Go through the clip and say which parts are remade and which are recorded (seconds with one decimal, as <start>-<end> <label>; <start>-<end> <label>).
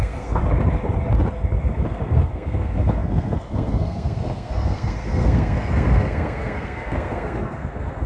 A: 0.0-0.4 remade; 0.4-1.6 recorded; 1.6-8.1 remade